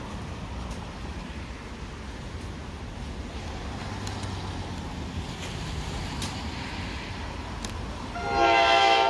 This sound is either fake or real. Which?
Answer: real